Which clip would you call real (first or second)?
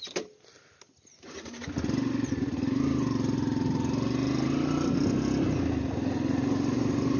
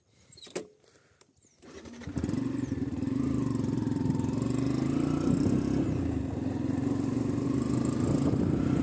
first